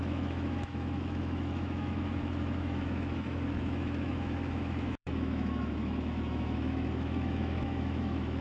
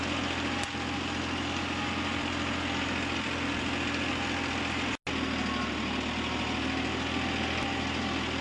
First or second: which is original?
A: second